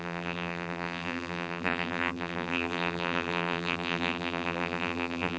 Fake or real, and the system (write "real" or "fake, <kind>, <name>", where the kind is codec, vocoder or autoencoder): fake, vocoder, BigVGAN v2